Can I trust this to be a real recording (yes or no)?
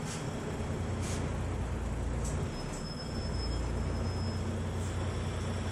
yes